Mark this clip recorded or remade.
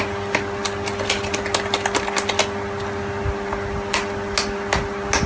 recorded